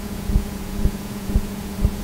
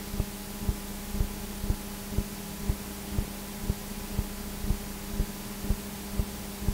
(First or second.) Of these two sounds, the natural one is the second